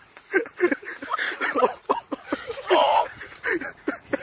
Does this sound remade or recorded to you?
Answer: remade